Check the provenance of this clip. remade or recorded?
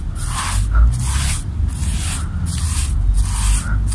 recorded